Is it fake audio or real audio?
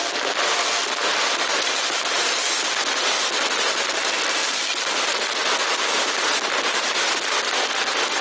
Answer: real